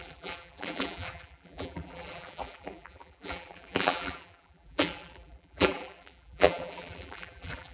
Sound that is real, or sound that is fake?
fake